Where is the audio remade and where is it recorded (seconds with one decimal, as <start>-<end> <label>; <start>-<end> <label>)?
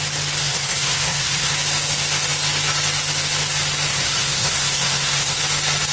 0.0-0.4 recorded; 0.4-1.5 remade; 1.5-3.9 recorded; 3.9-5.4 remade; 5.4-5.9 recorded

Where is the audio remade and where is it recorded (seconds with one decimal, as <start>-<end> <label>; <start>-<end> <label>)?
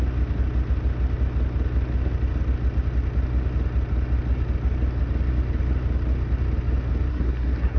0.0-7.1 recorded; 7.1-7.8 remade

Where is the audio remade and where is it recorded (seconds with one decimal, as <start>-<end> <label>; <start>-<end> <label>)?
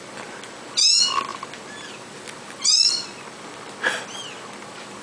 0.0-5.0 recorded